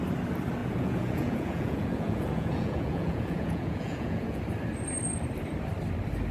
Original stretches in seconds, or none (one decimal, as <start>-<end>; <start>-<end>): 0.0-0.6; 4.4-6.3